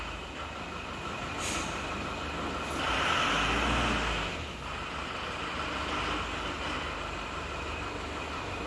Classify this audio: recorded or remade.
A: recorded